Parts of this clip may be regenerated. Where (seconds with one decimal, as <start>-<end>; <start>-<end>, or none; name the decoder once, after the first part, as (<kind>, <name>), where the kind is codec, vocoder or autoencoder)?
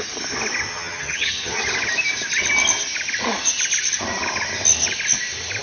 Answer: 0.7-1.6 (vocoder, HiFi-GAN)